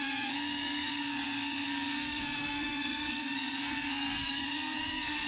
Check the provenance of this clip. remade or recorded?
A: remade